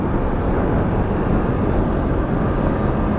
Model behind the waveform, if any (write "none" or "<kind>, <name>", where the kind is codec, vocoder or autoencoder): none